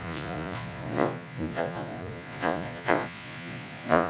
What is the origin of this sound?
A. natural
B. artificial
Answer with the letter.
B